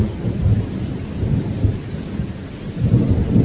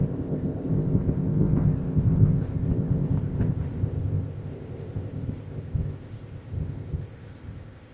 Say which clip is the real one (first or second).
first